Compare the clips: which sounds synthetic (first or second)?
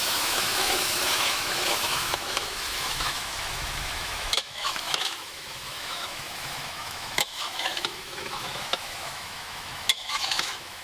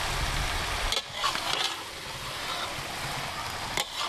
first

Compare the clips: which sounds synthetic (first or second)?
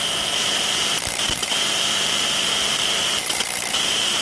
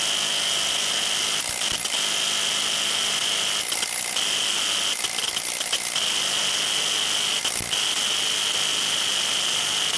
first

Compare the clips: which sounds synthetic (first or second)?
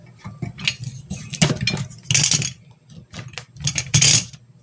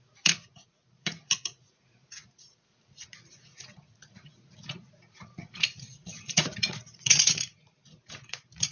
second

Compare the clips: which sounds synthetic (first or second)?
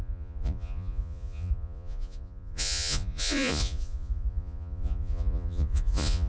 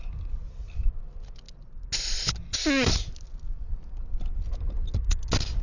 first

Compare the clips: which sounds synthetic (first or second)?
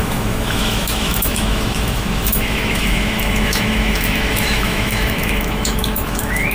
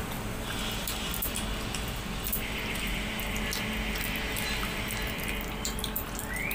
first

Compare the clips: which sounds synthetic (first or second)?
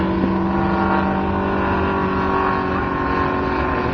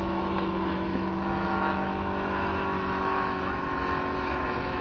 second